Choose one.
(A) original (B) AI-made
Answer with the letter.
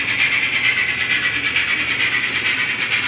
A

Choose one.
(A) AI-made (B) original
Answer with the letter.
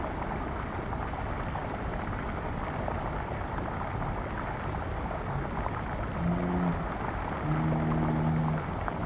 B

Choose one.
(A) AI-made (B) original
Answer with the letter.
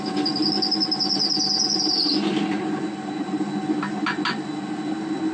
B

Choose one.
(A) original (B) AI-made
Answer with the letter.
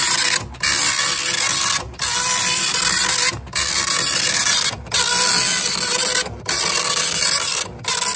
A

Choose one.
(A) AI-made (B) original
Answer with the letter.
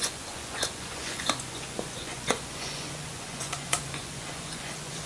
A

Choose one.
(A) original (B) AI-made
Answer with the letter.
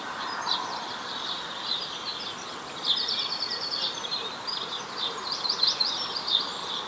A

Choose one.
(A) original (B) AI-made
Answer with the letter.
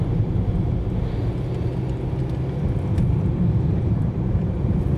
B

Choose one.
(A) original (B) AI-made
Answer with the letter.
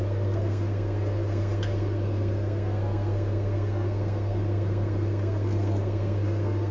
B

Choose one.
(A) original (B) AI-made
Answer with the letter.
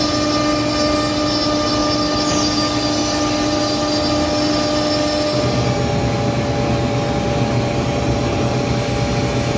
A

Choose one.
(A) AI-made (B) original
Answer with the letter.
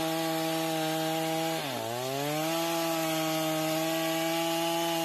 B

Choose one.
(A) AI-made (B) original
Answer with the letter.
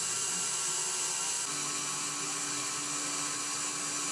B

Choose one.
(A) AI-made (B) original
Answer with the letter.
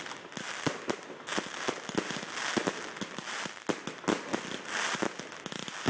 B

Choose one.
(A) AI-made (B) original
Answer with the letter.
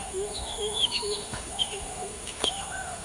A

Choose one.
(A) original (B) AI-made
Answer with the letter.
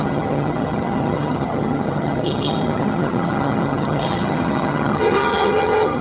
B